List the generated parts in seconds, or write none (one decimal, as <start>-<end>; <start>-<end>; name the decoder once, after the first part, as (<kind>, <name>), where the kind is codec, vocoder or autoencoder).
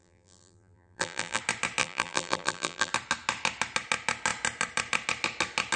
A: 0.0-1.4 (vocoder, BigVGAN v2); 1.8-2.9